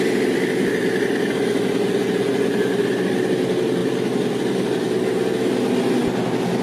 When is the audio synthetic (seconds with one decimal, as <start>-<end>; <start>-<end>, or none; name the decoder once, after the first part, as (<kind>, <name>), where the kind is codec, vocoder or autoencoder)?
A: none

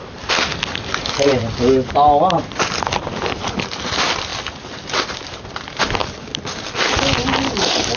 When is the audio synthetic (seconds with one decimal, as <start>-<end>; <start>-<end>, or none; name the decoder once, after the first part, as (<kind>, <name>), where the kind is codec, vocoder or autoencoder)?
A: none

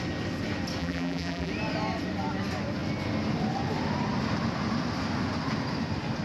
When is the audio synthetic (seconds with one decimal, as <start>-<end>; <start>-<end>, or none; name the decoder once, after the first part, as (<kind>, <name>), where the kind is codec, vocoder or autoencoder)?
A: 0.8-1.5 (vocoder, BigVGAN v2)